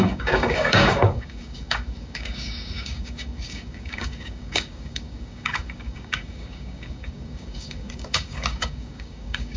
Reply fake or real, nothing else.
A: fake